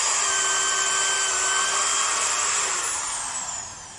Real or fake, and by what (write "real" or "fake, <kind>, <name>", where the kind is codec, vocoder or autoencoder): real